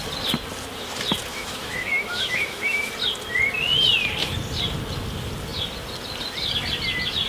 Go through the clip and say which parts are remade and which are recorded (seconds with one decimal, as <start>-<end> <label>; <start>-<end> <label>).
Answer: 0.0-1.3 recorded; 1.3-2.9 remade; 2.9-7.3 recorded